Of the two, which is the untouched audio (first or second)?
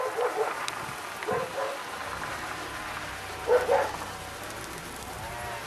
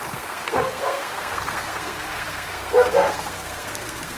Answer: first